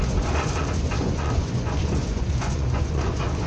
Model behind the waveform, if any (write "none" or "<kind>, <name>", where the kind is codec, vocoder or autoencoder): vocoder, Vocos